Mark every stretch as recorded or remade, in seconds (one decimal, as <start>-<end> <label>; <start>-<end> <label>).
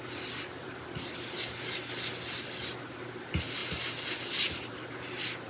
0.0-5.5 recorded